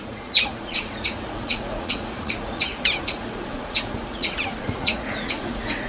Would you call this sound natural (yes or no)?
no